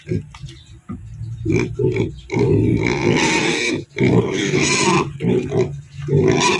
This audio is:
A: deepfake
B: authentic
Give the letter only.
B